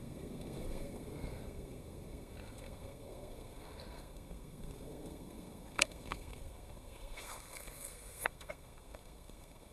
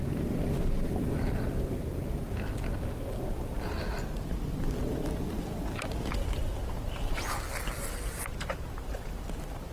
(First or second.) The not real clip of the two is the first